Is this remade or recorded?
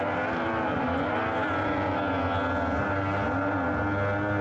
recorded